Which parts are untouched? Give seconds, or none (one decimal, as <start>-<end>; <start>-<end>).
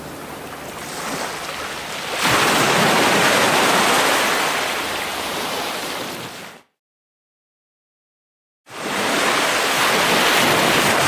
0.0-11.1